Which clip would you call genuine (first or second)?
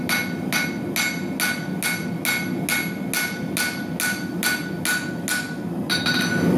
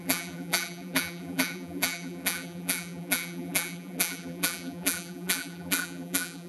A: first